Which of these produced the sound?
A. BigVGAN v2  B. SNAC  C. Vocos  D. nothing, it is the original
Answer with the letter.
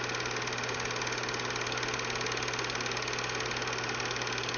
D